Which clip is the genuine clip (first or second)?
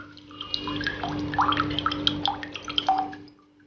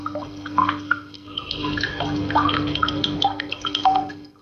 first